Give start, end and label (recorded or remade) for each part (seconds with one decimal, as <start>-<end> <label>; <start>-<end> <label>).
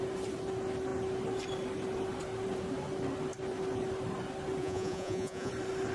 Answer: 0.0-4.6 recorded; 4.6-5.5 remade; 5.5-5.9 recorded